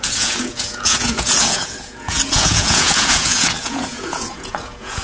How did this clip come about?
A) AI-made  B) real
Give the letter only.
A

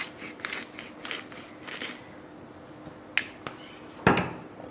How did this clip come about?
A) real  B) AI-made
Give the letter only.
A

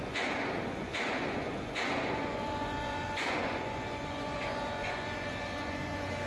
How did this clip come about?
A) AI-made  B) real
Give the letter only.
A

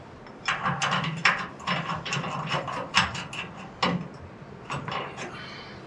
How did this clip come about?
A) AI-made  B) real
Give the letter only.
B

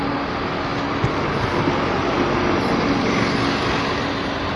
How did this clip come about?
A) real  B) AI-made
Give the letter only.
A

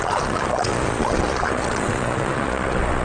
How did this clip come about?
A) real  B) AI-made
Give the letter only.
B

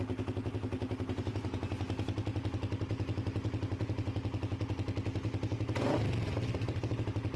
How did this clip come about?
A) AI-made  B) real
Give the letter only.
B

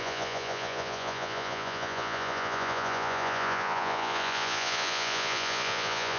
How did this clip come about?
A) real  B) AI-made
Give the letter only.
B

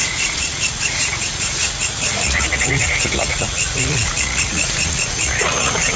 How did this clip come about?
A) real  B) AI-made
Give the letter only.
B